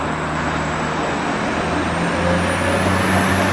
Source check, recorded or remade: recorded